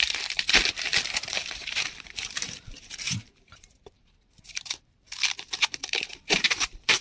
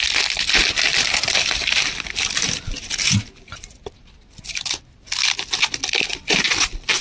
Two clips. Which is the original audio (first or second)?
second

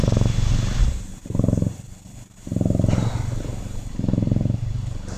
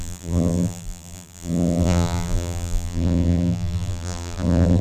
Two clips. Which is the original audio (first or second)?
first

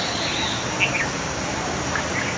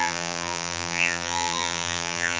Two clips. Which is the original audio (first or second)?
first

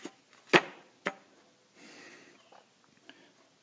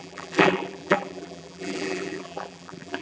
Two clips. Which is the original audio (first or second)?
first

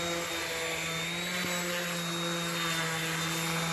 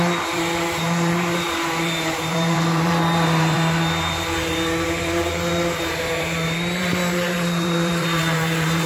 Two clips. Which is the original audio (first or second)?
first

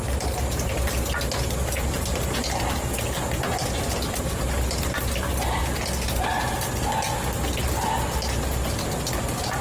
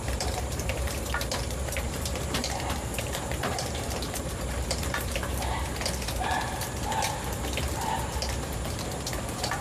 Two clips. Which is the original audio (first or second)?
first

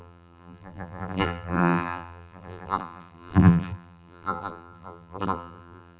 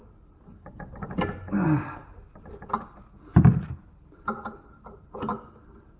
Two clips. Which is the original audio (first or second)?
second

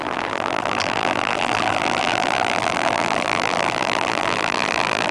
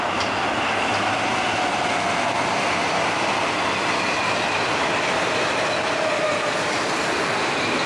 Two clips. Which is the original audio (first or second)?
second